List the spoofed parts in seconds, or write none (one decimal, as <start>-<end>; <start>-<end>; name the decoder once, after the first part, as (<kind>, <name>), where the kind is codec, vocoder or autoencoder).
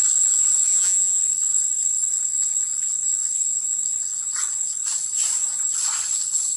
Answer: 0.7-1.2 (vocoder, Vocos)